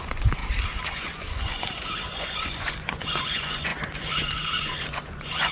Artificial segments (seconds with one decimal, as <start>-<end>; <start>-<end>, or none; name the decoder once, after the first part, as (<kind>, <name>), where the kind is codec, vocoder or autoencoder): 0.0-0.4 (vocoder, Vocos); 0.9-5.5